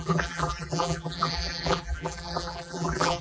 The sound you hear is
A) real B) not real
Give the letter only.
B